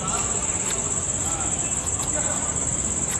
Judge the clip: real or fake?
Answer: real